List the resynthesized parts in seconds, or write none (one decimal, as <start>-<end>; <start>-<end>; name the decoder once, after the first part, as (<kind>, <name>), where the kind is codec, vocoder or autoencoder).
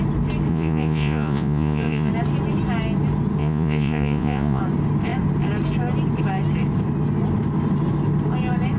0.5-2.1 (vocoder, Vocos); 3.4-4.6